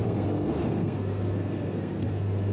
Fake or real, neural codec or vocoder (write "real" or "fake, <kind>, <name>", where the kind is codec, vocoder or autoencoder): fake, codec, SNAC